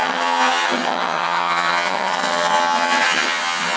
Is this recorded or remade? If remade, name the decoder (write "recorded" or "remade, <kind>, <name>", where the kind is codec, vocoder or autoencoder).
remade, vocoder, HiFi-GAN